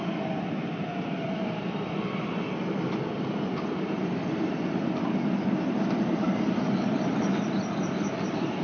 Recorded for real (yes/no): no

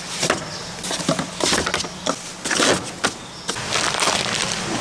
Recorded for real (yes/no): yes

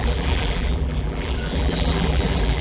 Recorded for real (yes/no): no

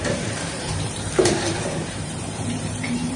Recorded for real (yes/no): no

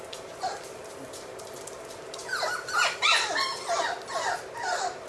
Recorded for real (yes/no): yes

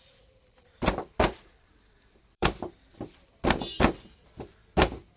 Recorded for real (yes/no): no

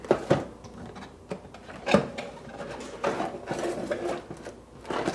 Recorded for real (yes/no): yes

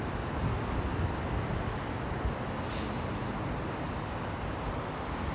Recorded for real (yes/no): yes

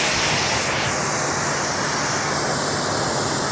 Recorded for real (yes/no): yes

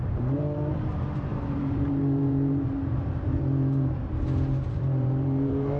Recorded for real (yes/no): no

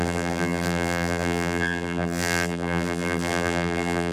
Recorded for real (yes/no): no